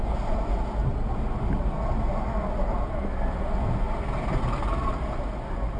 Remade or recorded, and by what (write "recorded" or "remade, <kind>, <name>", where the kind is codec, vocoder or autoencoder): recorded